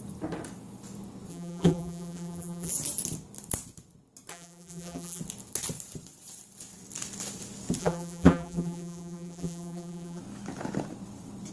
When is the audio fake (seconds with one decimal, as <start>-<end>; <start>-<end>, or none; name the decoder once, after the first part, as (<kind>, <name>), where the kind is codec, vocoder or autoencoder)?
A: 1.3-2.7 (vocoder, BigVGAN v2); 4.3-5.2; 7.8-10.2